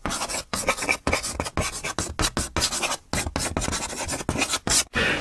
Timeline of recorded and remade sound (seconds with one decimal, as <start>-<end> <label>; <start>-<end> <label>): 0.0-1.5 remade; 1.5-4.6 recorded; 4.6-5.2 remade